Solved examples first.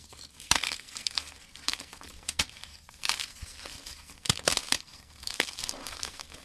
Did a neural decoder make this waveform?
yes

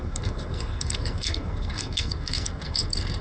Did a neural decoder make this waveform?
yes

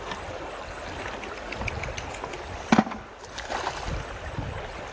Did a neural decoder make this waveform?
no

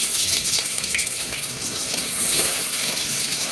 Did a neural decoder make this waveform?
yes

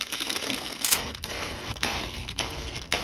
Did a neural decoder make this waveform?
yes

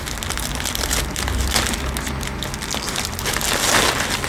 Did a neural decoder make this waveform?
no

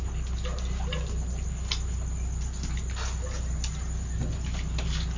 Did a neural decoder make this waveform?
no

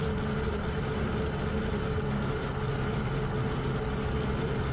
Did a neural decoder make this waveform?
no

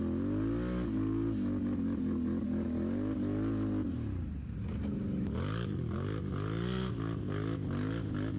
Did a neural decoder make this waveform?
no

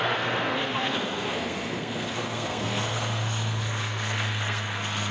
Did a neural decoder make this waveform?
yes